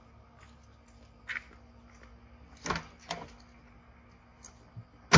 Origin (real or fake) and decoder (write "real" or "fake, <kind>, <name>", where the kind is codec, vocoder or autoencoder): real